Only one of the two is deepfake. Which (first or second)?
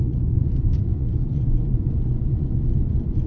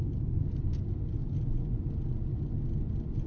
first